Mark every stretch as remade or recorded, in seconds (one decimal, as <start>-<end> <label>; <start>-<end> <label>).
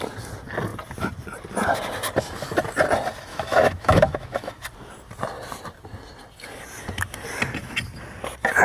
0.0-3.3 recorded; 3.3-4.5 remade; 4.5-8.6 recorded